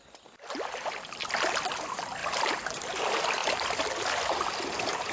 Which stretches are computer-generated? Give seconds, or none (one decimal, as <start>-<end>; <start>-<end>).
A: none